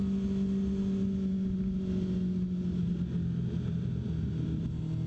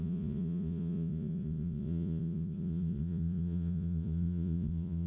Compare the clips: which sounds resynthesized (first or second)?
second